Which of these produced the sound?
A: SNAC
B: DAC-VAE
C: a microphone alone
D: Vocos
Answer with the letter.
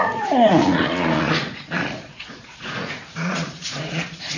D